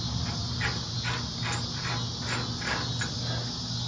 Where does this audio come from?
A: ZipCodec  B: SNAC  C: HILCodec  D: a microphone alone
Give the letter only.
D